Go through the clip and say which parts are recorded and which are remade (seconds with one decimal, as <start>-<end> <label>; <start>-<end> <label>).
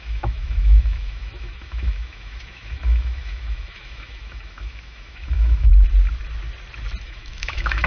0.0-5.7 remade; 5.7-7.0 recorded; 7.0-7.9 remade